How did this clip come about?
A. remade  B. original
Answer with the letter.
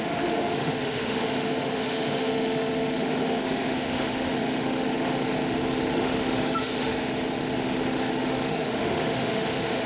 A